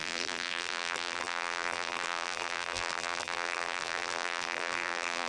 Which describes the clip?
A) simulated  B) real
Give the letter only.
A